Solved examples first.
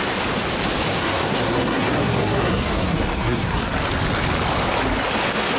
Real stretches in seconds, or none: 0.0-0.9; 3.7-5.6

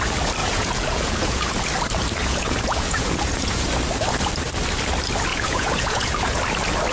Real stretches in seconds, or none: 0.0-0.4; 1.5-2.2; 3.5-5.3; 6.4-6.9

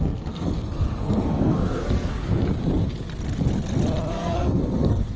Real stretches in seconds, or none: 2.2-4.1

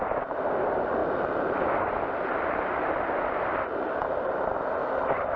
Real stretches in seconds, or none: 0.0-5.4

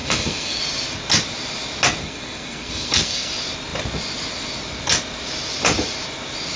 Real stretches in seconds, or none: 0.6-2.0; 3.3-6.6

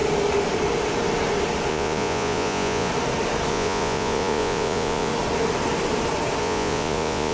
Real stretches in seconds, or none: 0.0-1.7; 2.9-3.5; 5.1-6.4

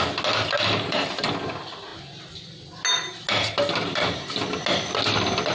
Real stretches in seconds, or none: 0.0-5.5